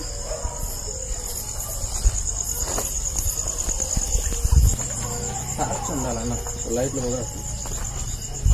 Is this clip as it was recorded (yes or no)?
yes